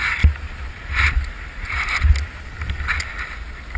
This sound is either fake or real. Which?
real